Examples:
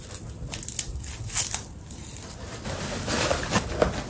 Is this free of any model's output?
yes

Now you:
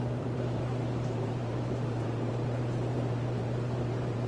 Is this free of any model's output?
no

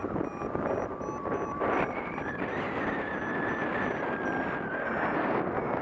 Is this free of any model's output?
no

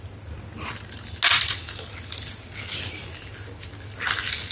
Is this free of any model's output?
yes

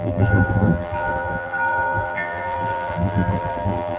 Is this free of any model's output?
no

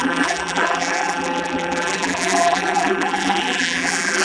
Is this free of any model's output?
no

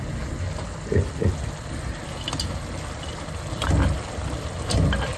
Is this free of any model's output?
yes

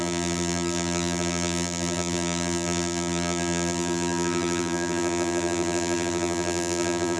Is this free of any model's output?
no